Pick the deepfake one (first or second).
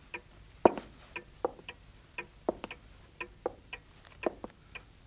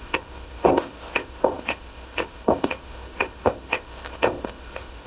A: second